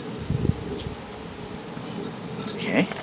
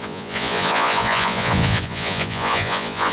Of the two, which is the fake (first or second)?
second